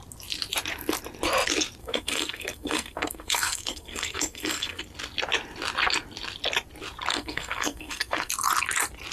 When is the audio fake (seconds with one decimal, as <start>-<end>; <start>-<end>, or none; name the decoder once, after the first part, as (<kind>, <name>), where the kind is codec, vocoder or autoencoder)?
1.8-4.8 (codec, SNAC); 7.1-8.3